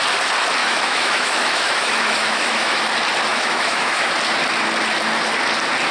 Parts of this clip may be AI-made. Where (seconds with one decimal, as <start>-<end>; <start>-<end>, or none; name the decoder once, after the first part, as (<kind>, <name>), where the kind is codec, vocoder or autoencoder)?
0.6-2.8 (autoencoder, DAC-VAE); 3.3-4.1